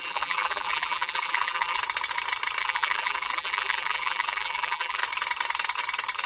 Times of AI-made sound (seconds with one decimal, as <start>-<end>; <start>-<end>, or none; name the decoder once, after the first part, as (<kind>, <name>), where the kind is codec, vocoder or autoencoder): 0.0-1.8 (vocoder, BigVGAN v2); 2.6-5.0